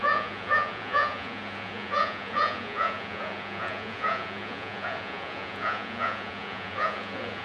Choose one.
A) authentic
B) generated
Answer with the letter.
B